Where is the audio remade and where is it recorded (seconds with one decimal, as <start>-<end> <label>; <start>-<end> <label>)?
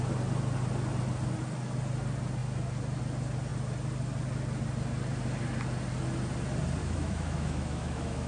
0.0-6.8 recorded; 6.8-8.3 remade